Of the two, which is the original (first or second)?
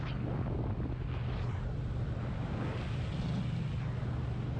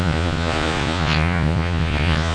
first